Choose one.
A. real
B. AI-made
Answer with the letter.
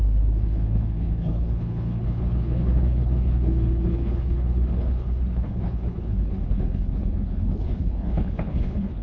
B